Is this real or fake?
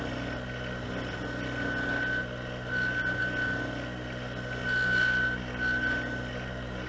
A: real